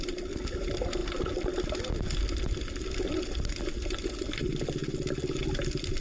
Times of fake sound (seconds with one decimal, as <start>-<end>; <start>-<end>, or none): none